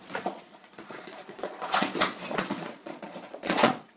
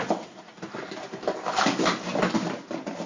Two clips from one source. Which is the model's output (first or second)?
first